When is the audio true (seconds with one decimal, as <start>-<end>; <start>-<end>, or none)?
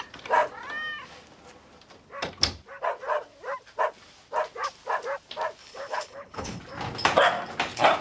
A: 0.0-5.6; 6.6-8.0